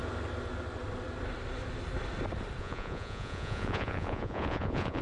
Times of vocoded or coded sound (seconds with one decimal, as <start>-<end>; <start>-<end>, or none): 2.6-5.0